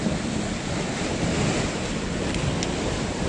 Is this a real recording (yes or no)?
yes